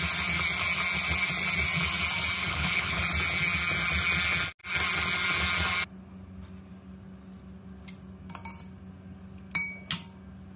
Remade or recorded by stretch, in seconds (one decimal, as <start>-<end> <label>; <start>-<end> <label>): 0.0-2.4 recorded; 2.4-3.0 remade; 3.0-10.6 recorded